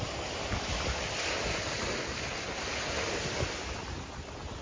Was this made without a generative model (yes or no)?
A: yes